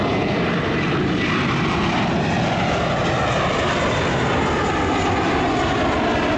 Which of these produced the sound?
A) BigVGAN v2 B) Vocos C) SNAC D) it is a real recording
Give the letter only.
D